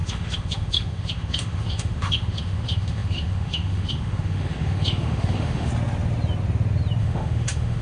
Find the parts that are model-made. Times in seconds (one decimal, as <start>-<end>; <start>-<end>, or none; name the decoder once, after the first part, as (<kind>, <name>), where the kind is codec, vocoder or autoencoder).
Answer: 0.0-5.7 (autoencoder, DAC-VAE); 7.0-7.8